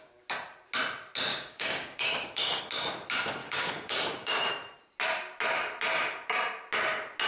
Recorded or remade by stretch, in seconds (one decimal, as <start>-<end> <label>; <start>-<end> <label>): 0.0-1.3 recorded; 1.3-2.6 remade; 2.6-3.4 recorded; 3.4-4.5 remade; 4.5-7.3 recorded